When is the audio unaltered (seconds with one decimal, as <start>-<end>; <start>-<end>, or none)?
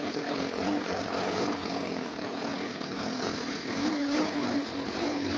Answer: none